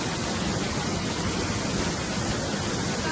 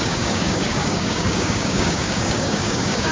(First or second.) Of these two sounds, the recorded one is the first